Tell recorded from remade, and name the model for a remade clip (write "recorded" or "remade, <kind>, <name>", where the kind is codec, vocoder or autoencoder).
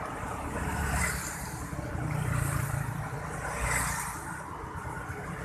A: recorded